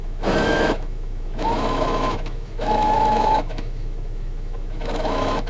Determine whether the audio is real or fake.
fake